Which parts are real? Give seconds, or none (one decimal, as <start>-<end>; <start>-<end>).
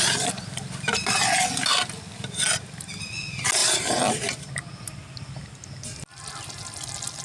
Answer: 0.0-3.6; 4.5-7.2